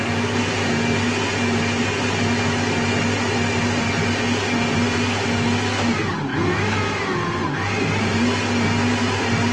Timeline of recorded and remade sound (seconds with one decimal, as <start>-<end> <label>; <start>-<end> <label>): 0.0-7.4 recorded; 7.4-8.4 remade; 8.4-9.5 recorded